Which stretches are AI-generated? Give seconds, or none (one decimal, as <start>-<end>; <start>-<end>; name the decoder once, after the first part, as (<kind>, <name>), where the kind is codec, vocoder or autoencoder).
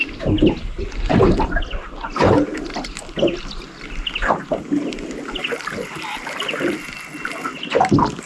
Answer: none